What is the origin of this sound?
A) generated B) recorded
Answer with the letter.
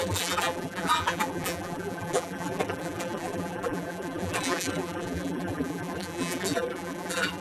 A